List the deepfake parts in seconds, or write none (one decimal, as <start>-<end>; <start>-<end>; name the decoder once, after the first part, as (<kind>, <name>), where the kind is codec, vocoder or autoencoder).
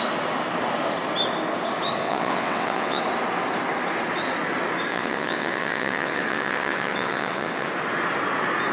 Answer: 2.0-3.0 (vocoder, WaveNeXt); 4.9-7.7